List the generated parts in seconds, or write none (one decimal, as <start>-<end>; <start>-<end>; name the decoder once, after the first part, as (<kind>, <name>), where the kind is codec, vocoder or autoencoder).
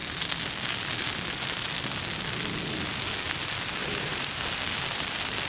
3.8-4.4 (vocoder, BigVGAN v2)